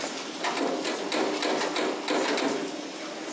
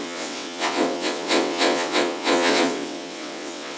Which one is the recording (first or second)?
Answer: first